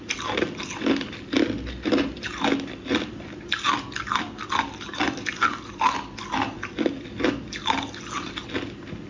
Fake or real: real